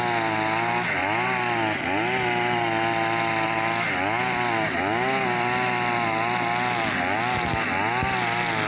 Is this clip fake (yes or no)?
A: no